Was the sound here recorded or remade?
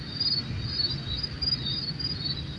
recorded